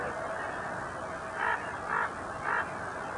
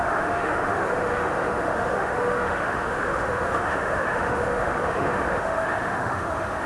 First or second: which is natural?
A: first